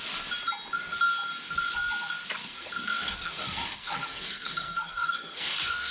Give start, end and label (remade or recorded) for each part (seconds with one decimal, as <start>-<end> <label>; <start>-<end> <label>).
0.0-2.4 recorded; 2.4-5.9 remade